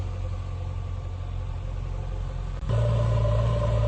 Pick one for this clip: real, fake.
real